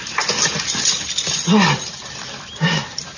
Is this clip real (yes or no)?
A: yes